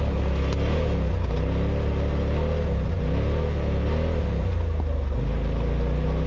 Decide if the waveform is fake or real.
real